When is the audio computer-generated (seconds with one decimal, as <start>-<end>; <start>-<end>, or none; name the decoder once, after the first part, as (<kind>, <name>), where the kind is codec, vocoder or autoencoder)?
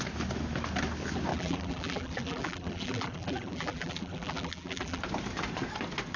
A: 1.3-5.0 (vocoder, BigVGAN v2)